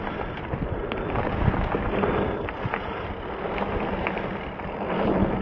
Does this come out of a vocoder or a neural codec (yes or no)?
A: no